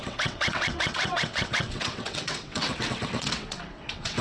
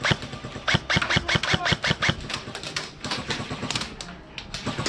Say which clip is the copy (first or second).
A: first